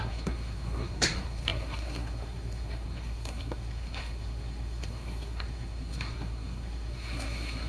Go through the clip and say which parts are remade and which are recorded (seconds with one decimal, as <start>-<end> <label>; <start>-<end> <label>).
0.0-7.7 remade